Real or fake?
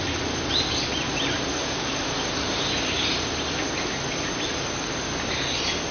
real